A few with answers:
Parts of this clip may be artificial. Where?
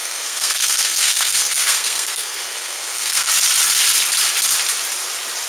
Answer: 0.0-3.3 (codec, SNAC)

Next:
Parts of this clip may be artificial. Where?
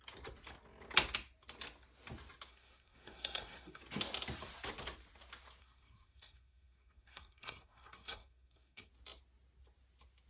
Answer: 2.5-3.8 (codec, SNAC); 5.6-8.9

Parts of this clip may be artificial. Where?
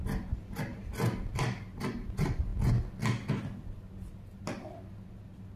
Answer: none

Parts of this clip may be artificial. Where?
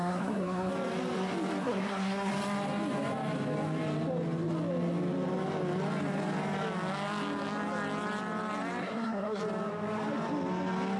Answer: 0.0-0.7 (codec, SNAC); 1.6-2.3; 8.8-9.4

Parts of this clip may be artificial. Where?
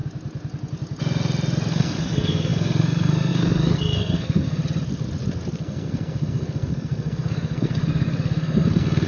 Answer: 1.7-4.6 (codec, SNAC); 5.6-9.1